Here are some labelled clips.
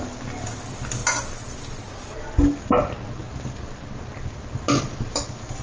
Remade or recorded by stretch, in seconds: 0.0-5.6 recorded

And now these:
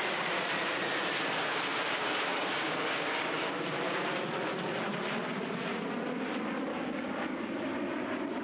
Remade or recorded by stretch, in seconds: 0.0-1.7 recorded; 1.7-3.5 remade; 3.5-6.7 recorded; 6.7-7.4 remade; 7.4-8.4 recorded

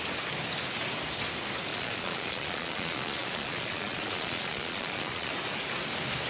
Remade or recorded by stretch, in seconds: 0.0-1.7 recorded; 1.7-5.3 remade; 5.3-6.3 recorded

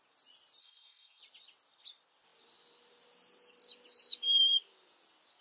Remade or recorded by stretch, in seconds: 0.0-0.6 recorded; 0.6-1.2 remade; 1.2-5.4 recorded

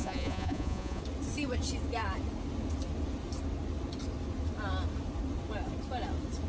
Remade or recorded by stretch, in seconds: 0.0-1.0 remade; 1.0-6.5 recorded